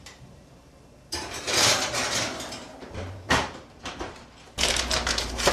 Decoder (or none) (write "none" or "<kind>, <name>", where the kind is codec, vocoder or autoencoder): vocoder, BigVGAN v2